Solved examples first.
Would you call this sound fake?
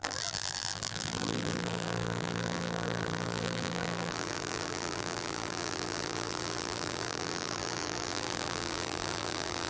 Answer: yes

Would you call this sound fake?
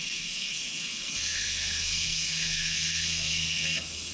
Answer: yes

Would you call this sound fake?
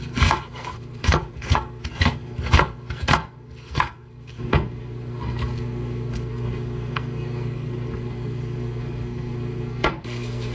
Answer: yes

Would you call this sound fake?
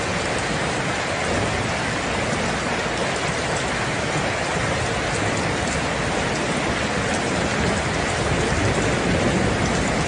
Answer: no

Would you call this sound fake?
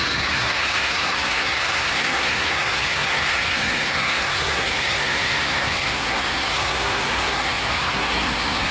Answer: yes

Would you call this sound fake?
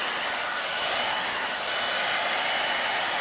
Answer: no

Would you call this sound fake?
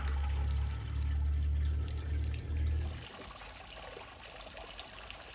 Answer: no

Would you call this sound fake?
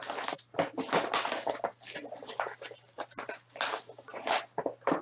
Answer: no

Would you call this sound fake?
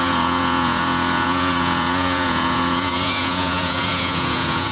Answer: yes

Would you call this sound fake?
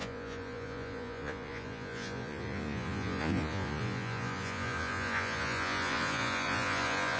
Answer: yes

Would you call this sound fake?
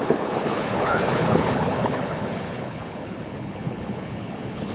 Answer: yes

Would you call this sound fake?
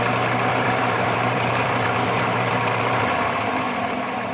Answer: yes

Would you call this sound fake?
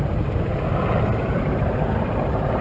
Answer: yes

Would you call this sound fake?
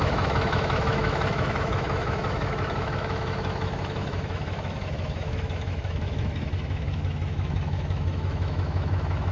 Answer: yes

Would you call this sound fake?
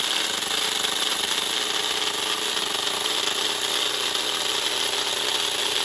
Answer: no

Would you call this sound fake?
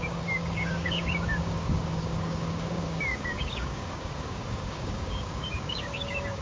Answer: yes